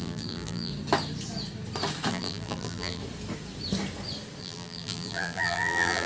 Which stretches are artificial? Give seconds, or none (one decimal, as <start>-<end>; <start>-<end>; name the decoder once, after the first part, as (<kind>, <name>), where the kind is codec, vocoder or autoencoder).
0.0-0.7 (vocoder, BigVGAN v2); 2.1-3.0; 4.4-6.1